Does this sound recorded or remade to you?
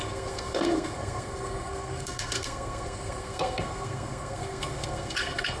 remade